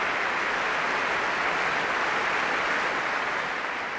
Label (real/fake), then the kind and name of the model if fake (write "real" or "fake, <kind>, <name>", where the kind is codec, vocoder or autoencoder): real